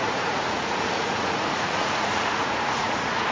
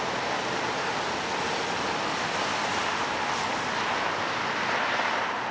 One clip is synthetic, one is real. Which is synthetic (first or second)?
first